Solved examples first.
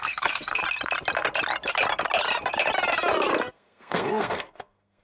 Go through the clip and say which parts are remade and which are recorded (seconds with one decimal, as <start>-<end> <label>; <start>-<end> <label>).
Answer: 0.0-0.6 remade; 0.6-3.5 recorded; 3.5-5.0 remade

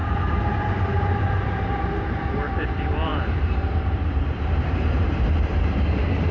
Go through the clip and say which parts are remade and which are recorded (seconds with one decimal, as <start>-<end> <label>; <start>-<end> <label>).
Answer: 0.0-6.3 remade

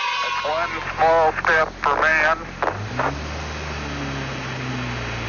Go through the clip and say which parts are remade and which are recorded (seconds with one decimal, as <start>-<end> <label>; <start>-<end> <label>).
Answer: 0.0-5.3 recorded

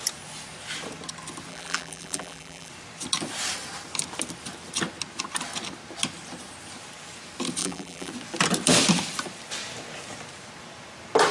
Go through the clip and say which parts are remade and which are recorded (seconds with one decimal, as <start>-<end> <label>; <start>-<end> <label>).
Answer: 0.0-1.5 recorded; 1.5-2.7 remade; 2.7-7.6 recorded; 7.6-8.1 remade; 8.1-11.3 recorded